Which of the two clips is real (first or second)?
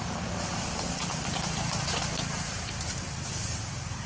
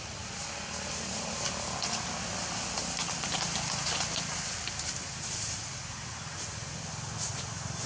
second